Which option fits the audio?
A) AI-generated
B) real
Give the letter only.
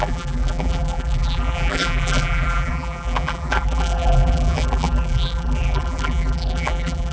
A